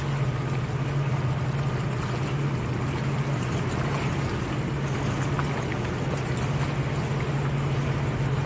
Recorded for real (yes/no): yes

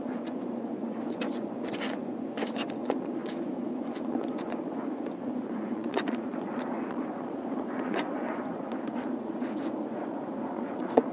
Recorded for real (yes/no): no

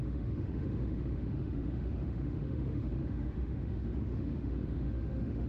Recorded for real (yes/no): no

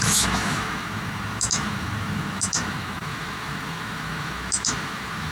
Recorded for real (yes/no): no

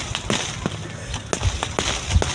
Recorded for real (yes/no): yes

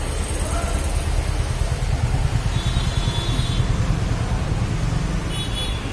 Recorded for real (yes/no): yes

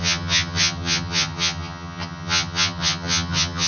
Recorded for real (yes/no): no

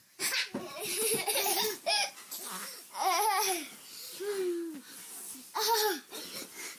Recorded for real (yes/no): yes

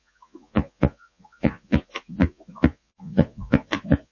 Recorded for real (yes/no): no